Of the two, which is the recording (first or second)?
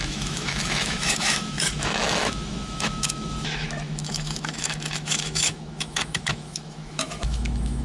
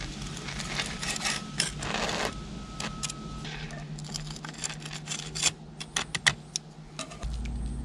second